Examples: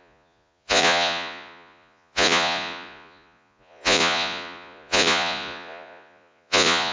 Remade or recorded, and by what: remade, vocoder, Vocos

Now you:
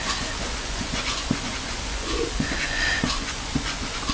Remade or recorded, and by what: remade, vocoder, Vocos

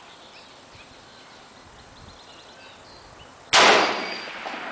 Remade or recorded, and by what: recorded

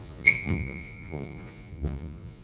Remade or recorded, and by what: remade, vocoder, Vocos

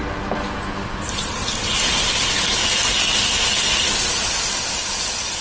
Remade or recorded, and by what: recorded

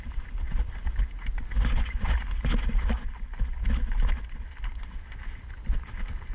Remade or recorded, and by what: recorded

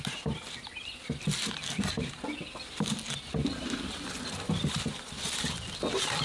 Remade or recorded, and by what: recorded